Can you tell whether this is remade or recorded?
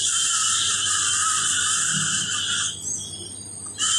recorded